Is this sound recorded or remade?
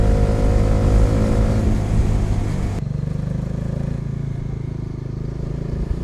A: recorded